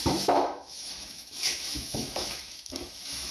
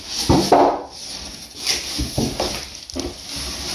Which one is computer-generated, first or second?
first